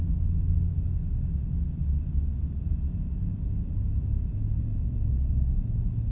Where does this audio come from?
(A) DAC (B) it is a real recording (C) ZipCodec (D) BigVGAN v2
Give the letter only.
B